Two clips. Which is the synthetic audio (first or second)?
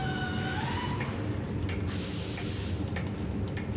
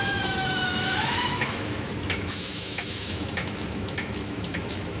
second